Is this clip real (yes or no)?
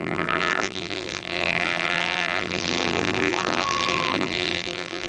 no